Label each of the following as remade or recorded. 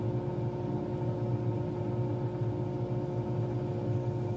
recorded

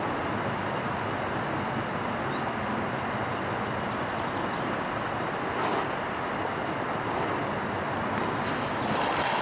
recorded